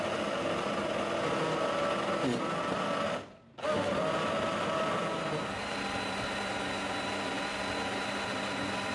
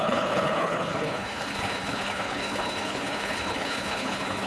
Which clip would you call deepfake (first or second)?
second